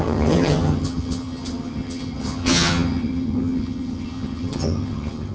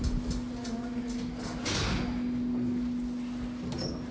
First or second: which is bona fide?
second